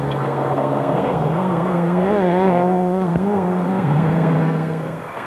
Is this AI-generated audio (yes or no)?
yes